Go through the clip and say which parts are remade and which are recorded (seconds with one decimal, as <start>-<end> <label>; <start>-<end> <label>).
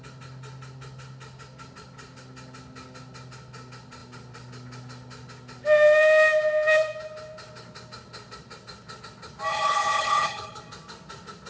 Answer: 0.0-9.5 recorded; 9.5-10.6 remade; 10.6-11.5 recorded